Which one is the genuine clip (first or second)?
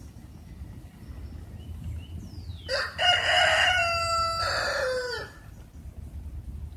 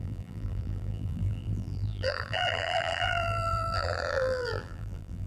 first